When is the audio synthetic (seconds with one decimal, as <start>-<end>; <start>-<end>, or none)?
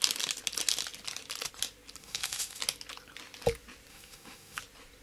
2.0-2.6; 3.9-4.6